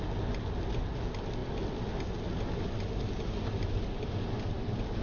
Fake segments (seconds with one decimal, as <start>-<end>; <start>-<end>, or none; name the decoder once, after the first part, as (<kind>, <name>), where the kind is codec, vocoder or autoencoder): none